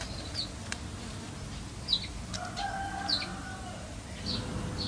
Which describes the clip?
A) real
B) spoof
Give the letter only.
A